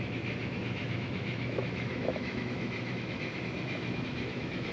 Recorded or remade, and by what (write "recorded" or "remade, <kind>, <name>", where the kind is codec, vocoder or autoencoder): remade, autoencoder, DAC-VAE